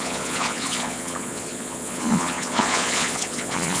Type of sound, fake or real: fake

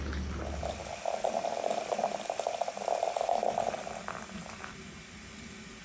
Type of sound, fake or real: real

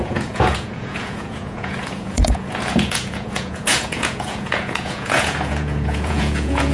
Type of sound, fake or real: fake